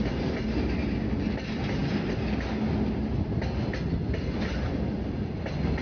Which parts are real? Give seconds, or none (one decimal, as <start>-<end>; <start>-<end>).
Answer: 0.0-5.8